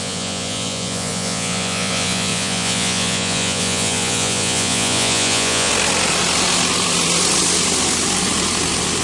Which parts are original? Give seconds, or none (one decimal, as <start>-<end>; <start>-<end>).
5.7-9.0